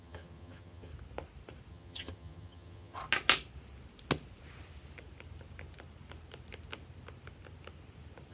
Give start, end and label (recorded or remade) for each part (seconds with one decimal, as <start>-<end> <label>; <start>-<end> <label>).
0.0-0.9 remade; 0.9-1.7 recorded; 1.7-3.0 remade; 3.0-8.3 recorded